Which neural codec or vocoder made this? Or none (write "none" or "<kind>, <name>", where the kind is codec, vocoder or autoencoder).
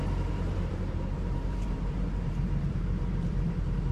vocoder, BigVGAN v2